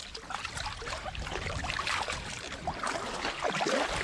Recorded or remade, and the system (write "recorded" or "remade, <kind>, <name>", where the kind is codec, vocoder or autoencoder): recorded